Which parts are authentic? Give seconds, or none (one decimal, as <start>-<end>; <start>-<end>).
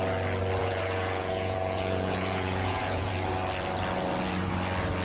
0.0-0.6; 3.1-5.0